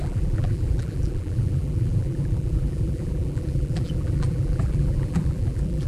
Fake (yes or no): yes